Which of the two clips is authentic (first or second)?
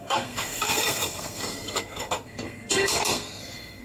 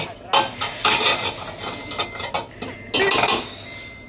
second